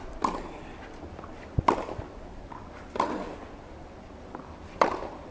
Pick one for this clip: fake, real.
real